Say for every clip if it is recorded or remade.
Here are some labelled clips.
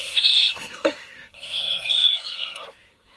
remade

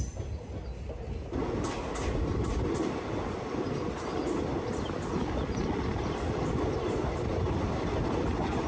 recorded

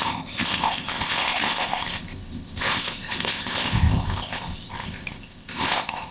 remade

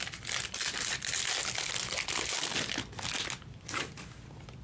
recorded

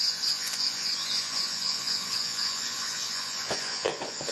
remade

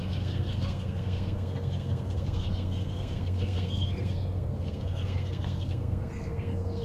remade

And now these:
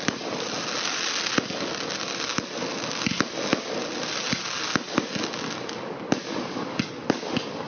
recorded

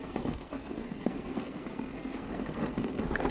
remade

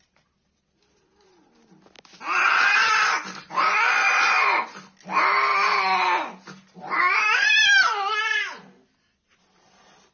recorded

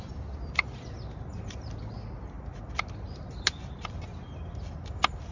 recorded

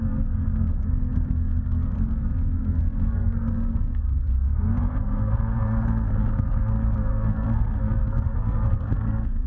remade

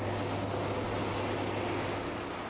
recorded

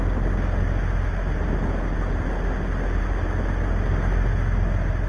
recorded